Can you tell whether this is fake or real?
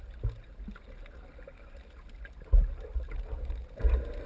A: real